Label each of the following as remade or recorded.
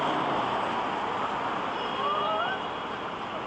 recorded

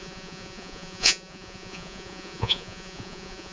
remade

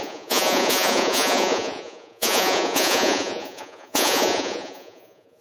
remade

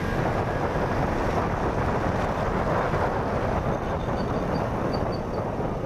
recorded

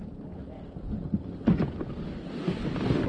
recorded